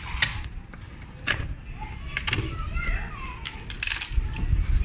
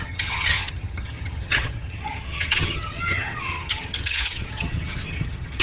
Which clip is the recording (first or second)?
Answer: first